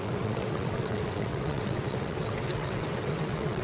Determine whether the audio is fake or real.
fake